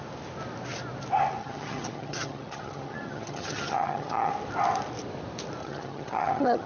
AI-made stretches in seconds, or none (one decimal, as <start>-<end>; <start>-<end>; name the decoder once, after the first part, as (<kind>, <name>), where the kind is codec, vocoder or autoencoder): 1.4-4.3 (vocoder, HiFi-GAN); 5.6-6.7